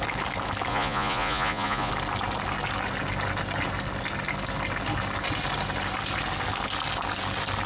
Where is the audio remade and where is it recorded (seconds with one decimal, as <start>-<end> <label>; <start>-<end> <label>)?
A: 0.0-0.7 recorded; 0.7-1.9 remade; 1.9-7.7 recorded